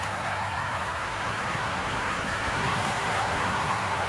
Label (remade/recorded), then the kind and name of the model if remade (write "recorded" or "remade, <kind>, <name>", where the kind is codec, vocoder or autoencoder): remade, codec, SNAC